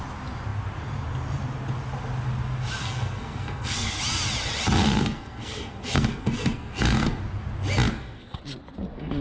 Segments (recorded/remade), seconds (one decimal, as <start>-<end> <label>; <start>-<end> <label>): 0.0-2.8 recorded; 2.8-4.0 remade; 4.0-4.8 recorded; 4.8-7.2 remade; 7.2-7.9 recorded; 7.9-8.4 remade; 8.4-9.2 recorded